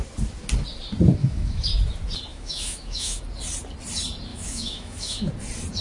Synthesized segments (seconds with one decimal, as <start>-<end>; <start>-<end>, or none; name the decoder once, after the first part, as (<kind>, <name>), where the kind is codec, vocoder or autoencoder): 1.2-1.7 (autoencoder, DAC-VAE); 2.3-3.2; 4.3-5.3